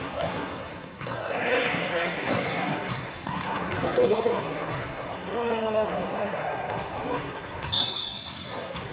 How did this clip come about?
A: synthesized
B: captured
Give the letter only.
A